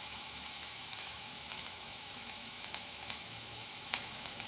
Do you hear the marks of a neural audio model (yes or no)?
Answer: yes